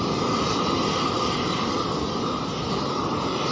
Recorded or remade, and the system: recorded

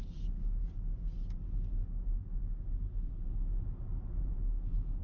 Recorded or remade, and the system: recorded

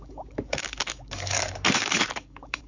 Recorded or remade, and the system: remade, codec, DAC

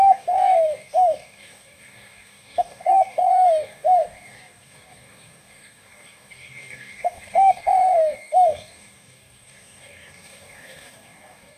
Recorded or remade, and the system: remade, codec, DAC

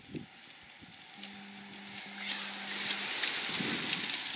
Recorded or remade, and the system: recorded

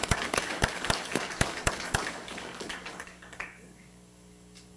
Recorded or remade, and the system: remade, codec, DAC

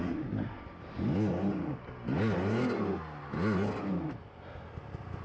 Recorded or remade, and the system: recorded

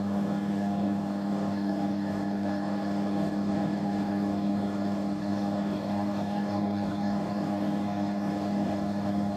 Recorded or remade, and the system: remade, codec, DAC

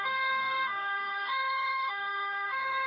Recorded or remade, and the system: remade, codec, DAC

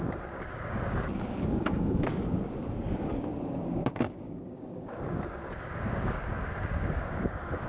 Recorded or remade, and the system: remade, codec, DAC